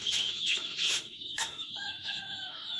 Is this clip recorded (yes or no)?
no